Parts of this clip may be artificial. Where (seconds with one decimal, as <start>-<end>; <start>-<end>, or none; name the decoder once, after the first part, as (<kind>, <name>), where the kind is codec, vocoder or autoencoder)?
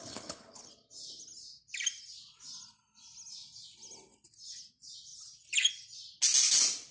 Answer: 0.0-0.7 (codec, HILCodec)